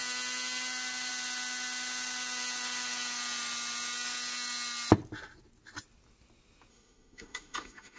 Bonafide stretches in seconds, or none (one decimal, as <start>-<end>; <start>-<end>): 0.0-6.7